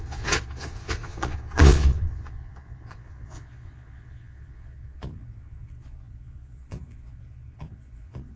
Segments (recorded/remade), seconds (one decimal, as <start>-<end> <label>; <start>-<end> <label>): 0.0-8.4 remade